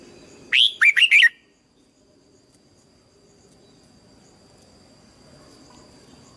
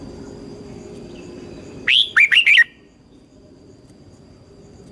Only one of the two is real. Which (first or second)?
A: first